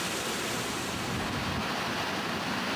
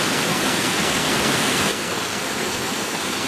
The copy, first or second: second